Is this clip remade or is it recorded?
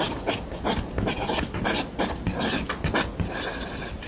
recorded